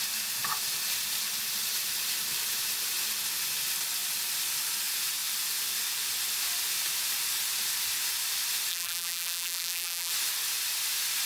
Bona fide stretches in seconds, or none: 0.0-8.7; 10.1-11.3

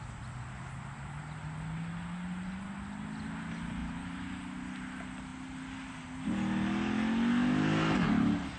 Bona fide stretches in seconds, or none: 0.0-3.8; 4.3-8.6